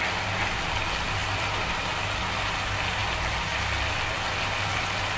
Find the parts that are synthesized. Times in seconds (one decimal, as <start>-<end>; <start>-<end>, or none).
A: 1.2-2.0